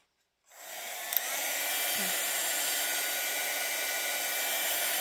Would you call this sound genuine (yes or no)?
yes